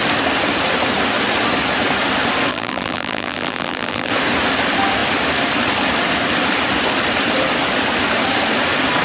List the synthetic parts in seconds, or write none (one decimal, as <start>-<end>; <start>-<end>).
2.5-4.1